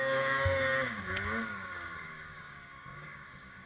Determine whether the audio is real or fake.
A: fake